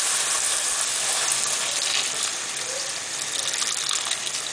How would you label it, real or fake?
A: real